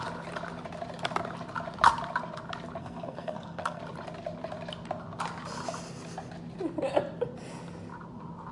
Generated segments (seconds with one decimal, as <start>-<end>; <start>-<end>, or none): 2.8-3.8